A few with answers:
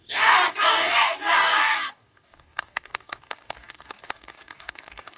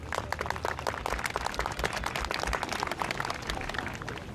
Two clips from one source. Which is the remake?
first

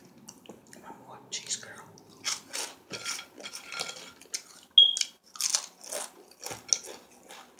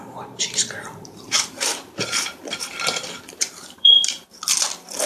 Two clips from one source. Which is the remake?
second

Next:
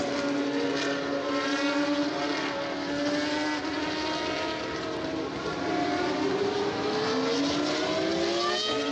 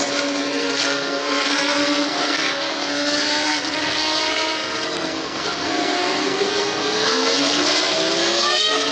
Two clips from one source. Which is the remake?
second